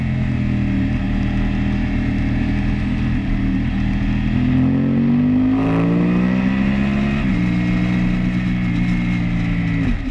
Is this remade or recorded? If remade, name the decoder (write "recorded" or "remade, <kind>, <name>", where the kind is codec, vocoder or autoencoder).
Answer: recorded